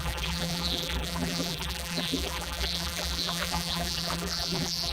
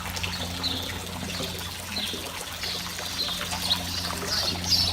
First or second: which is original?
second